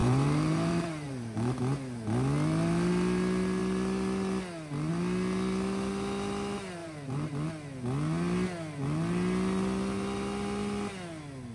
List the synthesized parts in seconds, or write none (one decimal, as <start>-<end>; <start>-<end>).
0.0-1.6; 6.8-7.3